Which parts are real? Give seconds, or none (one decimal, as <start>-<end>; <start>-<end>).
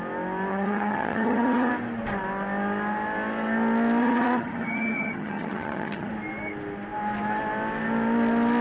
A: 0.0-0.5; 1.7-4.0; 6.1-8.6